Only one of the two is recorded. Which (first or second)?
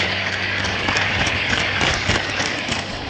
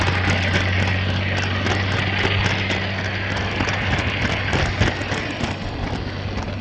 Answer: second